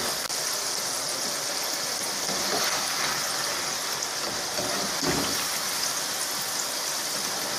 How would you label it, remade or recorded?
recorded